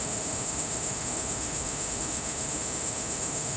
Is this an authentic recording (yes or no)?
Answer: no